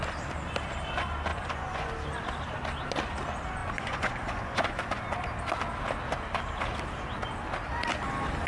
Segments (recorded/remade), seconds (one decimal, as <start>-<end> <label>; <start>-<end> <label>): 0.0-1.3 recorded; 1.3-1.9 remade; 1.9-3.6 recorded; 3.6-5.0 remade; 5.0-8.5 recorded